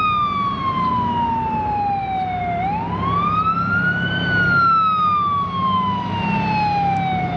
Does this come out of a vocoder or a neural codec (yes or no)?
no